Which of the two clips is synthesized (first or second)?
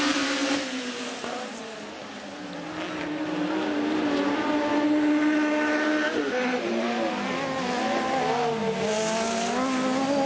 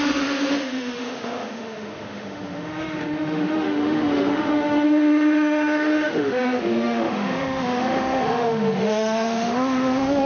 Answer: second